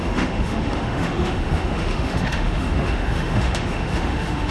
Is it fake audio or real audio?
fake